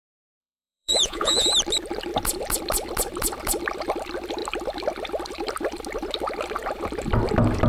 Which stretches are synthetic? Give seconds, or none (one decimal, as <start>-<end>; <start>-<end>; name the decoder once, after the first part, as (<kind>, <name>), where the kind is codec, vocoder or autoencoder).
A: 0.4-1.5 (vocoder, Vocos)